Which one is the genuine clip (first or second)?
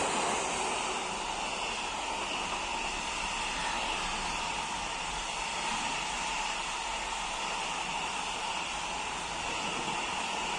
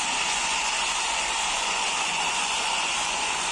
first